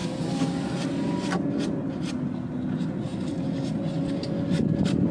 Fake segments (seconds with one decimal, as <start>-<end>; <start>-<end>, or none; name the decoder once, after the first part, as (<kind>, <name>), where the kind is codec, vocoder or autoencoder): none